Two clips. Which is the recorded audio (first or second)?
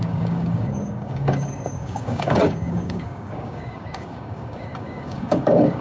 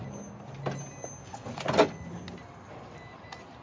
second